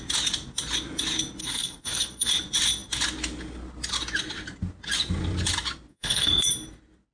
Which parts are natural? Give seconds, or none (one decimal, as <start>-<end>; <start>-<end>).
0.0-1.4; 2.3-5.9; 6.5-7.1